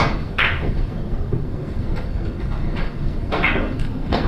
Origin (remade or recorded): remade